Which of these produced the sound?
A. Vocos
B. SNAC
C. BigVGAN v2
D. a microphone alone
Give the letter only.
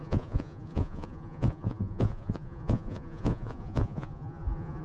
A